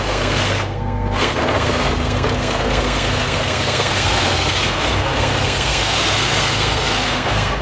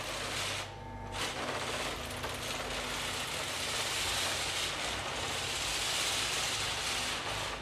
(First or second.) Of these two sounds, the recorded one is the second